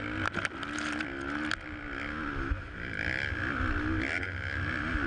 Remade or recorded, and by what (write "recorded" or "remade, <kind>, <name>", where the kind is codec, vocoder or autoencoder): recorded